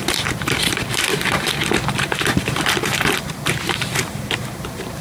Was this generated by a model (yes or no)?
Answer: yes